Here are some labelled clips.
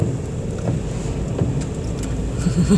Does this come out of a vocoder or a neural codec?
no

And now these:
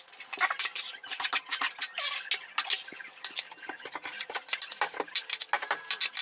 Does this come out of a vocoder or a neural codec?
no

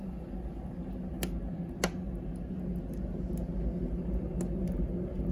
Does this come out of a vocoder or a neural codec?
no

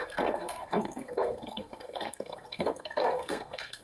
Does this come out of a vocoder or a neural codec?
yes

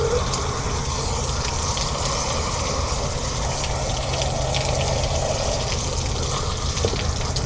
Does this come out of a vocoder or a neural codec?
no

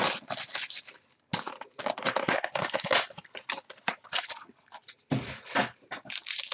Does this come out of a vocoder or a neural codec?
no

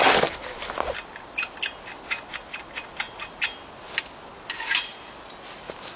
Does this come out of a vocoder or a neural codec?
no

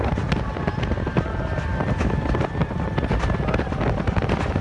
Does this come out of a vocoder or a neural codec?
no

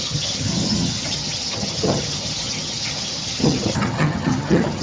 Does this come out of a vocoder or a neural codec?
yes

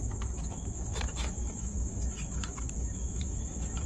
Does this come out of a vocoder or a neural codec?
yes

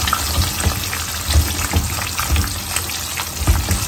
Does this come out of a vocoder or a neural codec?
no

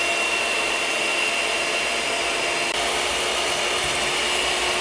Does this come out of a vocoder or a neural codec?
no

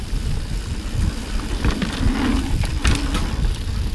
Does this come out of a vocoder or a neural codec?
no